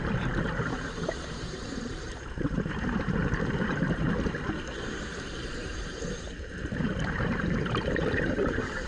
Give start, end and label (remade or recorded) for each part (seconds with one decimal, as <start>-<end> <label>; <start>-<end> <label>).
0.0-8.9 remade